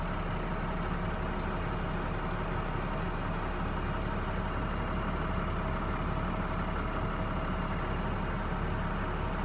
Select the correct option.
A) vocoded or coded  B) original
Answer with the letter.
B